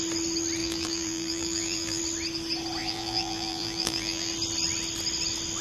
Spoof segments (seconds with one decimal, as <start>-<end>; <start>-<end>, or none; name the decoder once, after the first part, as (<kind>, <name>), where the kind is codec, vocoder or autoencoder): 0.6-2.0 (vocoder, BigVGAN v2); 2.8-4.3